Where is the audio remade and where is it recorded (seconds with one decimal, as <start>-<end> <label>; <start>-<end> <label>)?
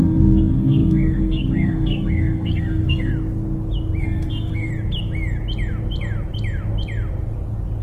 0.0-3.1 remade; 3.1-4.0 recorded; 4.0-4.7 remade; 4.7-7.8 recorded